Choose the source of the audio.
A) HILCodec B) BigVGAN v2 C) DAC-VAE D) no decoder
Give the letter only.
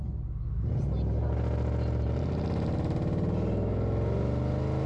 D